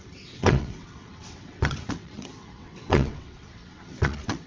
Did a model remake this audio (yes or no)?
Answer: yes